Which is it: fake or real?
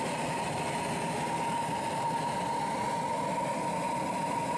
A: real